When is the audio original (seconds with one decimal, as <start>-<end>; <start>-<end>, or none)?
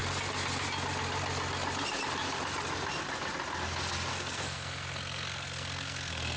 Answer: 0.0-4.1